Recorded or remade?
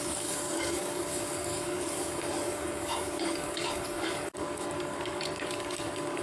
remade